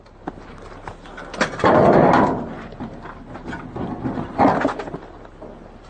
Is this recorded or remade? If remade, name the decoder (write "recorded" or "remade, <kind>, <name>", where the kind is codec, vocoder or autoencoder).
recorded